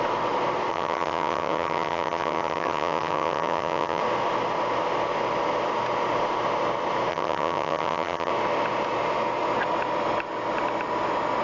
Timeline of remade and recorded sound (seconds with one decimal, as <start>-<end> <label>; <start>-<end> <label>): 0.0-0.7 recorded; 0.7-4.0 remade; 4.0-7.1 recorded; 7.1-8.3 remade; 8.3-11.4 recorded